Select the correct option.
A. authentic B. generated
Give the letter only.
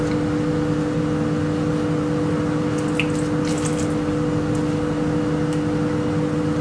A